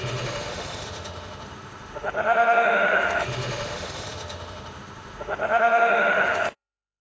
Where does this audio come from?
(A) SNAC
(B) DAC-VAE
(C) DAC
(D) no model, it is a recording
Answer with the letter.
B